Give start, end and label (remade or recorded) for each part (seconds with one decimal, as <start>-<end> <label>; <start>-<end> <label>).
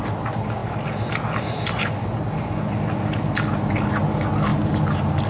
0.0-5.3 recorded